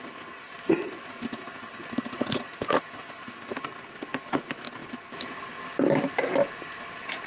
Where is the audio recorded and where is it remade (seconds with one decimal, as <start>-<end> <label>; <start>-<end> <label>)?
0.0-7.3 recorded

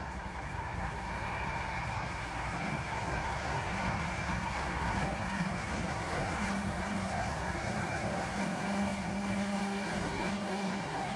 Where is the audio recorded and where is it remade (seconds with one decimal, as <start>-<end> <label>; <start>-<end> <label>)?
0.0-11.2 remade

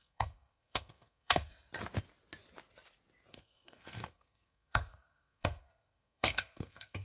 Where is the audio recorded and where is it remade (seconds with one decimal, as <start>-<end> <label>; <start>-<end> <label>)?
0.0-1.5 remade; 1.5-3.3 recorded; 3.3-7.0 remade

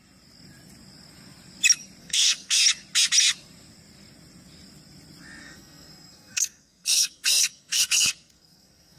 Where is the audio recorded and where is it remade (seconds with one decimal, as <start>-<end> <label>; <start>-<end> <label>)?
0.0-2.0 recorded; 2.0-2.6 remade; 2.6-5.4 recorded; 5.4-9.0 remade

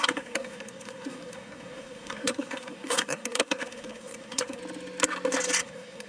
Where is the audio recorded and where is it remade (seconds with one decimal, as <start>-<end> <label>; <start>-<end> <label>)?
0.0-4.6 remade; 4.6-5.6 recorded; 5.6-6.1 remade

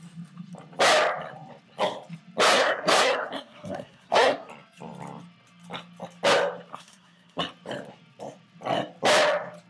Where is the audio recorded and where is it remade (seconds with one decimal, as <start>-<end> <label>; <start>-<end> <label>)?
0.0-2.5 recorded; 2.5-4.5 remade; 4.5-6.7 recorded; 6.7-7.4 remade; 7.4-9.7 recorded